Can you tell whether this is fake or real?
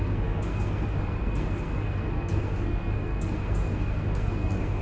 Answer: fake